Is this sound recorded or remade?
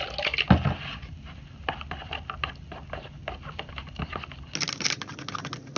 recorded